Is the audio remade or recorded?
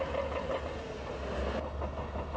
recorded